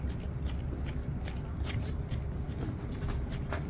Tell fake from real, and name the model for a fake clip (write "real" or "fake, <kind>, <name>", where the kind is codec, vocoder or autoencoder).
real